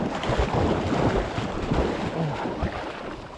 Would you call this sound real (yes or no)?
yes